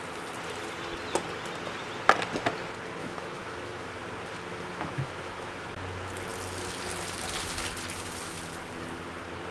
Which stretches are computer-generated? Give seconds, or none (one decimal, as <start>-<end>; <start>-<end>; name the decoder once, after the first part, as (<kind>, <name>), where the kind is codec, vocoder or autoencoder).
3.0-4.0 (autoencoder, DAC-VAE); 4.5-5.7